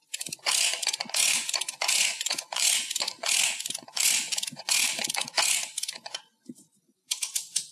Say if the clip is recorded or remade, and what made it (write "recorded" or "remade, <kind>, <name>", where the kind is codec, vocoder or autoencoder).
remade, vocoder, Vocos